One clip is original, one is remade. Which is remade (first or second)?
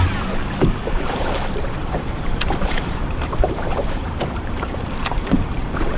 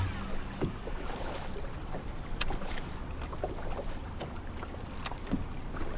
first